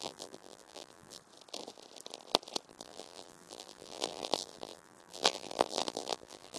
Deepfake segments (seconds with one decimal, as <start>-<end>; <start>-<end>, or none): 0.0-1.2; 2.7-6.6

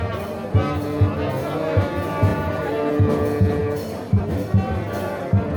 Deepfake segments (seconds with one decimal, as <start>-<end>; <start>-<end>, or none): 2.3-2.9; 3.6-4.2